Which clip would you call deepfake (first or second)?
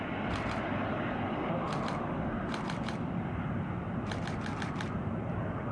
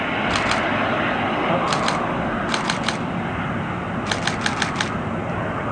first